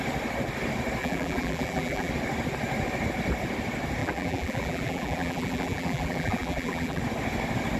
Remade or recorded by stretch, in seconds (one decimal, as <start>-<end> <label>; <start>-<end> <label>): 0.0-1.0 recorded; 1.0-2.1 remade; 2.1-4.0 recorded; 4.0-7.0 remade; 7.0-7.8 recorded